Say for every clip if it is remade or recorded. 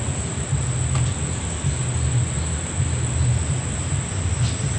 recorded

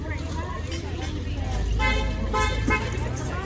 recorded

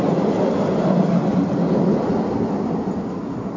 recorded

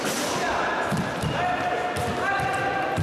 recorded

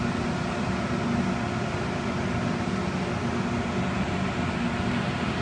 recorded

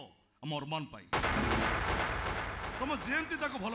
recorded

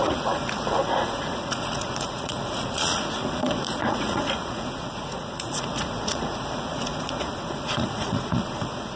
remade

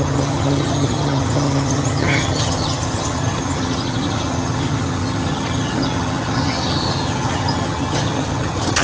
remade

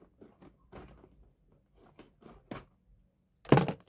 recorded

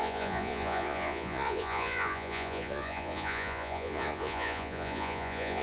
remade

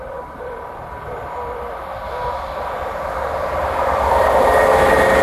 recorded